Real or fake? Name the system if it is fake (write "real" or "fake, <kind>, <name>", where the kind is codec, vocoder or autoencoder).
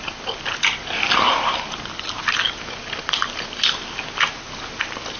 real